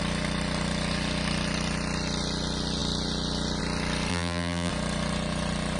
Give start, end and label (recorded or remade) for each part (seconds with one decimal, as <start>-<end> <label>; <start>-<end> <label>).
0.0-4.1 recorded; 4.1-4.7 remade; 4.7-5.8 recorded